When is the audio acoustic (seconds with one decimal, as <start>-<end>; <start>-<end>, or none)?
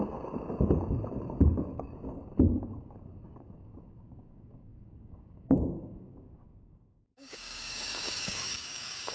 none